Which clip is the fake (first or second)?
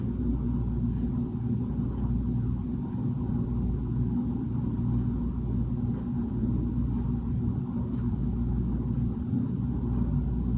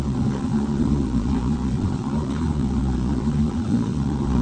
second